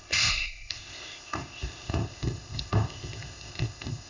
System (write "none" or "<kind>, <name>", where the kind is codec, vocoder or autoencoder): codec, ZipCodec